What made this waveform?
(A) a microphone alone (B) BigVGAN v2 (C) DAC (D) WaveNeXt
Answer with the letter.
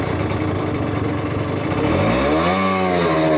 A